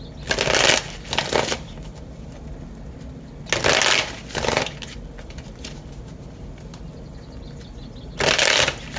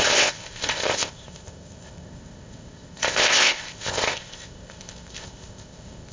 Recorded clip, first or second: first